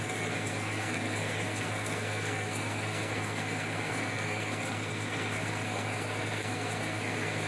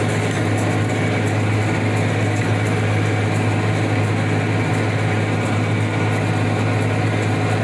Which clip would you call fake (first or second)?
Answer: first